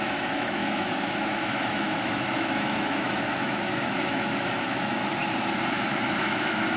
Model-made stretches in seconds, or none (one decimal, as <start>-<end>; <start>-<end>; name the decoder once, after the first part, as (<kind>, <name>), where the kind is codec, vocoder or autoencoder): 0.0-5.0 (autoencoder, DAC-VAE); 6.2-6.8